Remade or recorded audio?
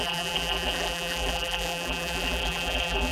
remade